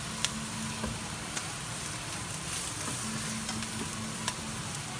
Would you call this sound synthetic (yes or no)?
no